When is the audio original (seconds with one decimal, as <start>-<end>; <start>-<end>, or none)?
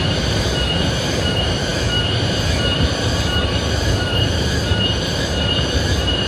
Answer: none